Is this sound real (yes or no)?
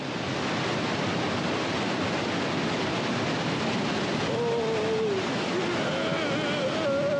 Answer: yes